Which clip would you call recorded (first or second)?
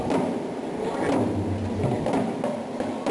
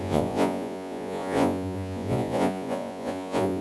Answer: first